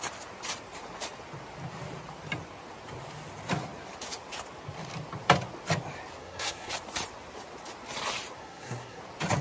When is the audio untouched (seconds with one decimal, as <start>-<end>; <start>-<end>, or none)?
0.0-6.2; 6.7-8.4; 9.0-9.4